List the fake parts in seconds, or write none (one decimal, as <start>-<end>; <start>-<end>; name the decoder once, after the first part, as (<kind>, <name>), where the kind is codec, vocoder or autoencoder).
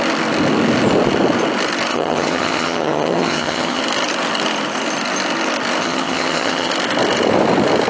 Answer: 1.9-3.8 (vocoder, HiFi-GAN); 5.8-6.7